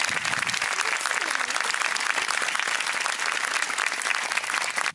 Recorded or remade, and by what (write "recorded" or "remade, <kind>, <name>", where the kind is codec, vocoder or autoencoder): recorded